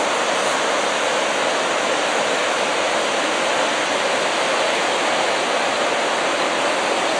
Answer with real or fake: real